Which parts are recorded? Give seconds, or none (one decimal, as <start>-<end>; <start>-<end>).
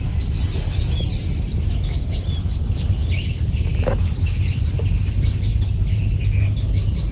0.0-5.5; 6.2-7.1